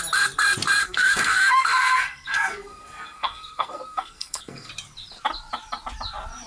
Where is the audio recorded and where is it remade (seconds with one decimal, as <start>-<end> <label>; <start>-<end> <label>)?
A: 0.0-0.8 recorded; 0.8-4.7 remade; 4.7-6.5 recorded